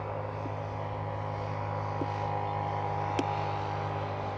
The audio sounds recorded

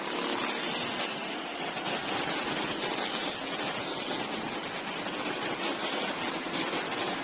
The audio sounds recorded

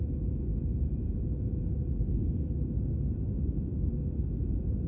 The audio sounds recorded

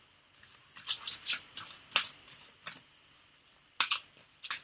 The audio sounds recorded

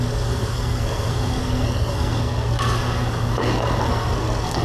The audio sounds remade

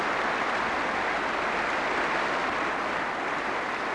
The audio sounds recorded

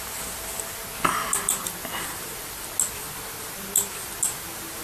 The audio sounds recorded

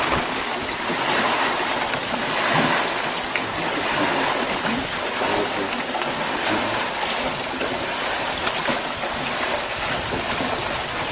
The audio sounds recorded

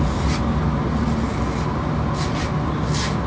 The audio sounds recorded